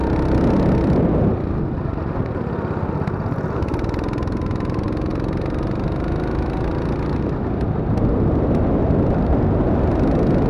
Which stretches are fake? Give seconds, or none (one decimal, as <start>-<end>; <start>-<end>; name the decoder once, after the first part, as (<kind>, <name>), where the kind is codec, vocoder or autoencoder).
none